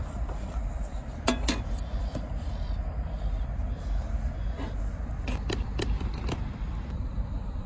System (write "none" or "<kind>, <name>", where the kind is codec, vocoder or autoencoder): none